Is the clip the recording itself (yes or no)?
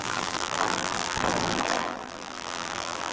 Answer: no